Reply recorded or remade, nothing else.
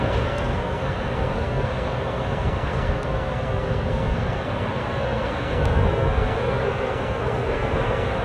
remade